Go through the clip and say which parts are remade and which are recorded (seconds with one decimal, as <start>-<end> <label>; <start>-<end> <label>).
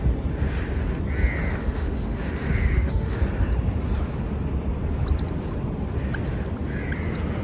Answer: 0.0-1.6 recorded; 1.6-3.2 remade; 3.2-7.4 recorded